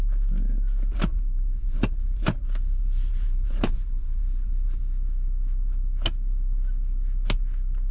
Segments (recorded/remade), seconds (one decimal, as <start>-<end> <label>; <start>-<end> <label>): 0.0-0.9 recorded; 0.9-4.8 remade; 4.8-7.9 recorded